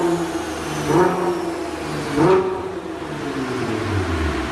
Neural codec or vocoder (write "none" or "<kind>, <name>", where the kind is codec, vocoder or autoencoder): none